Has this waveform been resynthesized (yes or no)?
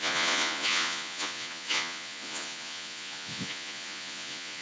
yes